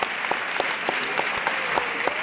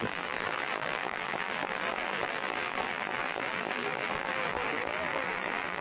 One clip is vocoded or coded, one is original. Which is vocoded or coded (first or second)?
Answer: second